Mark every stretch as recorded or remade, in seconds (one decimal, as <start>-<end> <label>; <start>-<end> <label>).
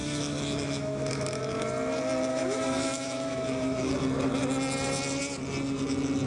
0.0-1.4 remade; 1.4-2.3 recorded; 2.3-3.9 remade; 3.9-6.3 recorded